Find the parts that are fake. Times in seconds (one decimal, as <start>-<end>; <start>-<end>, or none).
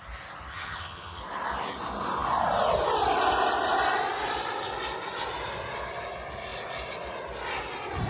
0.5-1.2